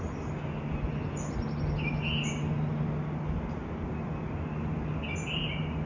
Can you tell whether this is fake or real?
real